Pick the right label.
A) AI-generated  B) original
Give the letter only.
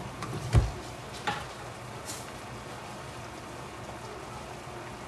B